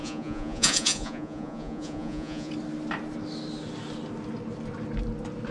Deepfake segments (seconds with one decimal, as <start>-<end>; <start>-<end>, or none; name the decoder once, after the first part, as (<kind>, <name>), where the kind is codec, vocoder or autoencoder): 0.0-2.5 (vocoder, Vocos)